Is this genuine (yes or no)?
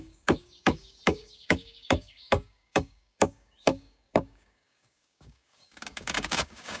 no